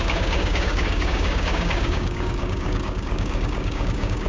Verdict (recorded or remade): remade